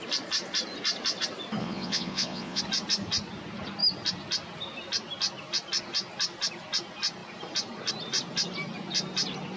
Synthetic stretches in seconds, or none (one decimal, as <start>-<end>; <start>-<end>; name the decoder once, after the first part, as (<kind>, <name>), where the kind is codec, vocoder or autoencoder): 1.6-2.6 (vocoder, Vocos)